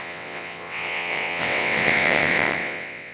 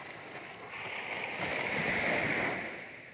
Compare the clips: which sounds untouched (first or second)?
second